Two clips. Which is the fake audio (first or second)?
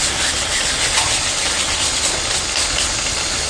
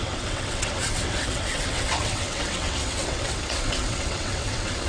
second